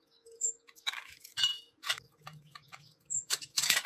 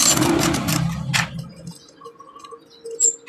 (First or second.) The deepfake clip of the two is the first